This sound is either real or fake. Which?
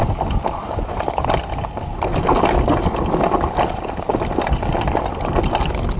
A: real